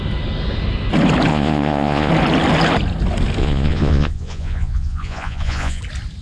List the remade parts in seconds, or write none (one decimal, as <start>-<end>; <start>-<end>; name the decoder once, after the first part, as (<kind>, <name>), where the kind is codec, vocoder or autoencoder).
1.3-2.1 (vocoder, Vocos); 3.4-5.8